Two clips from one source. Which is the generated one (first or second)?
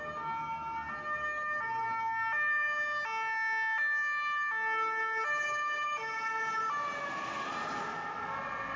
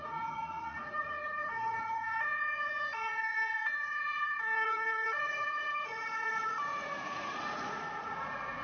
second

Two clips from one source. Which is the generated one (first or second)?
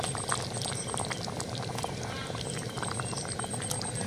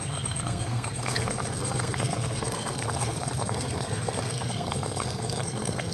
second